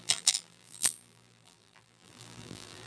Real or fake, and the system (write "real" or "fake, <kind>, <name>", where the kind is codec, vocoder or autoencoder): fake, vocoder, BigVGAN v2